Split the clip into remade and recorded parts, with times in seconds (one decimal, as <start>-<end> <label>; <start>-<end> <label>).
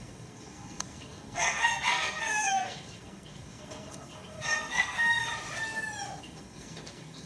0.0-5.3 remade; 5.3-6.2 recorded; 6.2-7.3 remade